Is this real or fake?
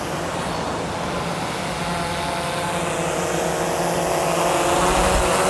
real